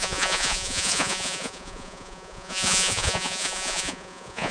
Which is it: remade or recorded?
remade